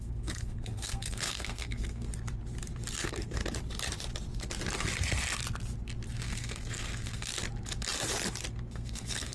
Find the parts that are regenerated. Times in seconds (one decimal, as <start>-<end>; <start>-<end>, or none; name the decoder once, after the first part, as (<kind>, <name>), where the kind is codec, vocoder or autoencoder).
0.0-2.1 (codec, SNAC); 3.0-3.4; 6.1-7.3; 8.7-9.3